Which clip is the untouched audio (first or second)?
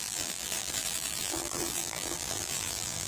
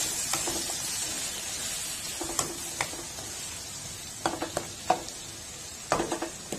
second